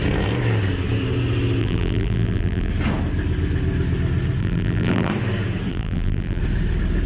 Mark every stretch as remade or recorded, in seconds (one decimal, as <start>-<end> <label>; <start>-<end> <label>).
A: 0.0-1.6 recorded; 1.6-2.7 remade; 2.7-4.4 recorded; 4.4-5.1 remade; 5.1-5.7 recorded; 5.7-6.4 remade; 6.4-7.1 recorded